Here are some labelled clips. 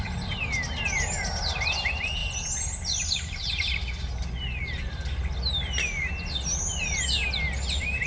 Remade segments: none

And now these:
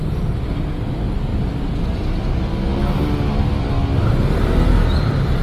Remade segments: none

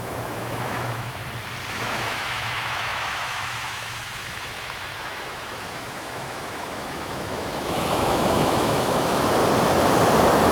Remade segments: 0.0-1.2; 1.7-9.4

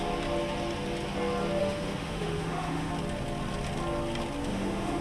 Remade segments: 1.6-2.9; 4.5-5.0

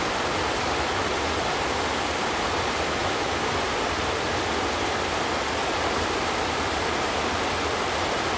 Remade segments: 3.0-3.5

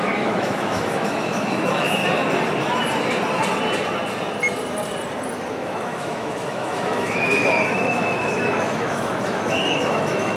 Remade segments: 0.0-2.0; 5.5-10.4

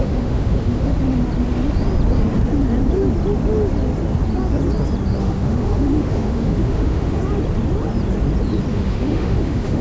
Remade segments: 0.0-0.9; 5.2-7.2; 8.7-9.8